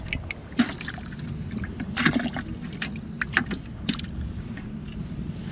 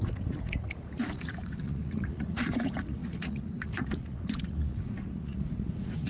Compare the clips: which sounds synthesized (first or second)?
second